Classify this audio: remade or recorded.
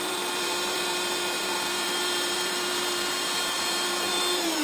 remade